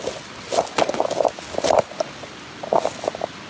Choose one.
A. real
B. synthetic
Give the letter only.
A